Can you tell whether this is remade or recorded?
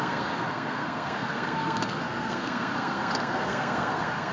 remade